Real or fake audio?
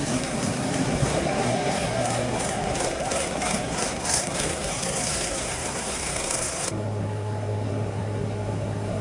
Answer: fake